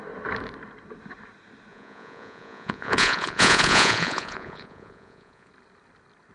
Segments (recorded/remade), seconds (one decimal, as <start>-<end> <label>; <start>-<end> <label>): 0.0-1.7 recorded; 1.7-5.5 remade; 5.5-6.3 recorded